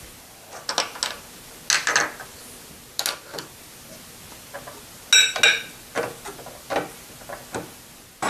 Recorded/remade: recorded